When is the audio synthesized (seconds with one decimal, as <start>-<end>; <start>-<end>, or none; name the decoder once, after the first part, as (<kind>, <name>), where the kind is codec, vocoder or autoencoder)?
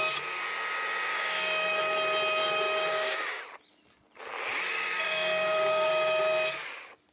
1.1-1.8 (codec, DAC); 2.4-3.4; 4.7-5.9